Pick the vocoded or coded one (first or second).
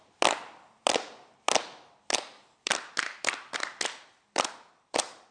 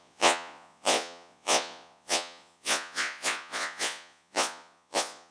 second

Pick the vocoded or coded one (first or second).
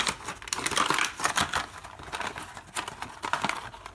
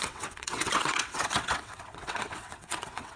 second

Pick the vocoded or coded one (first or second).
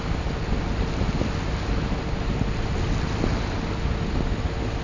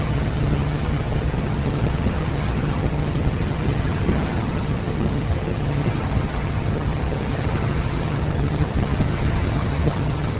second